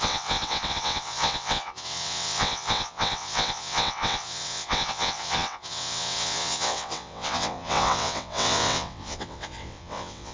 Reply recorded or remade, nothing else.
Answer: remade